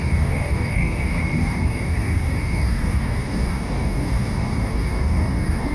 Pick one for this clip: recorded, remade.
remade